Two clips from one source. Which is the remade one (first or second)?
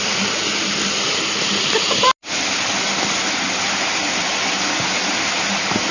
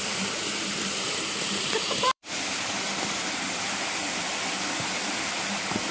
second